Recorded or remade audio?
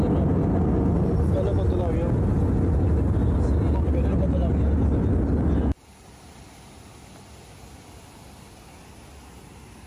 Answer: recorded